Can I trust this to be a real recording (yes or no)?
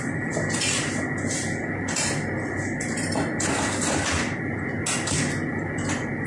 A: yes